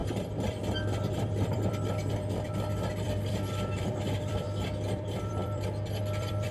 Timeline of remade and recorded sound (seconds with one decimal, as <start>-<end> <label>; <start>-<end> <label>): 0.0-6.5 remade